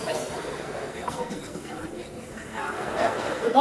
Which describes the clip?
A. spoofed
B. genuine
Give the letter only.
A